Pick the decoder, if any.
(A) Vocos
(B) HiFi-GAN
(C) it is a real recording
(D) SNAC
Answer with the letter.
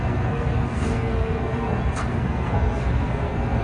D